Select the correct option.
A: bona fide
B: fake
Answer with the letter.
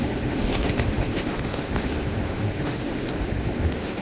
B